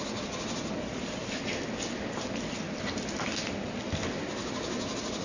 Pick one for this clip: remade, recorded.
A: recorded